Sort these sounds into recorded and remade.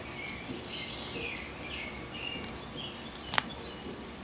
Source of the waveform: recorded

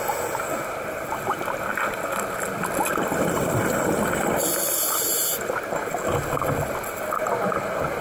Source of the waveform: recorded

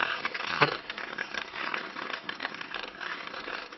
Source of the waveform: remade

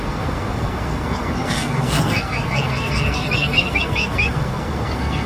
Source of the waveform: remade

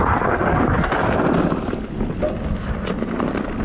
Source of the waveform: recorded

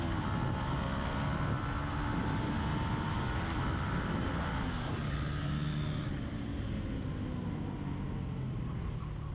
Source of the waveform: recorded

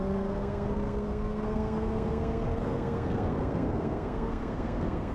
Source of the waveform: remade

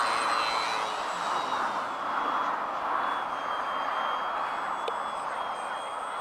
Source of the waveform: recorded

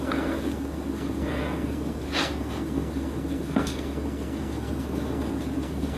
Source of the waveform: remade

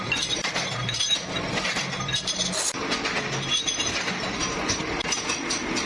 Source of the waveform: recorded